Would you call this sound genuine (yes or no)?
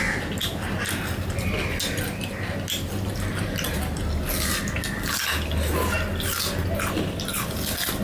yes